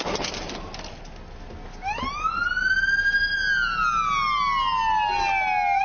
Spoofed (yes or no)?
no